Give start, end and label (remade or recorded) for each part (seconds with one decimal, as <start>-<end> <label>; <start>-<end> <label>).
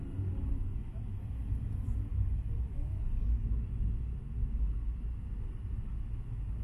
0.0-6.6 recorded